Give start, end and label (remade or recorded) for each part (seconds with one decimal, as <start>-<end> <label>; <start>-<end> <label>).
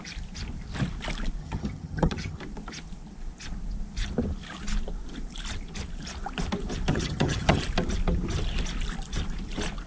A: 0.0-1.4 recorded; 1.4-2.4 remade; 2.4-6.9 recorded; 6.9-7.6 remade; 7.6-9.9 recorded